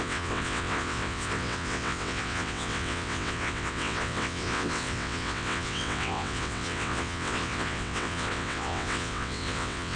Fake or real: fake